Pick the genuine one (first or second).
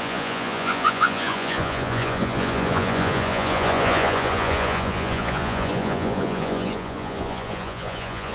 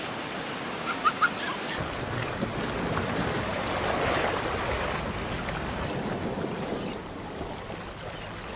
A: second